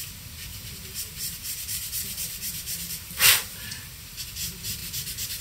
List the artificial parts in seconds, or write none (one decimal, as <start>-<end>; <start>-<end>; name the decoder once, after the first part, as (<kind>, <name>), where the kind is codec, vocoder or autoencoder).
0.5-3.7 (vocoder, BigVGAN v2)